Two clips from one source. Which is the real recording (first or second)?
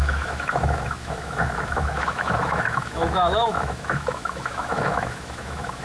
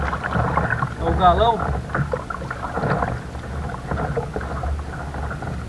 second